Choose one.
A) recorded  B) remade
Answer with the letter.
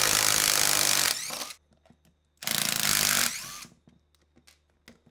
A